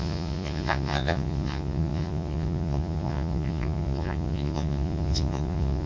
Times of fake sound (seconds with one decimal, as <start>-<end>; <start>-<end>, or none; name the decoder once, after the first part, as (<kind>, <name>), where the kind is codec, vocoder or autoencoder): 0.0-5.9 (vocoder, Vocos)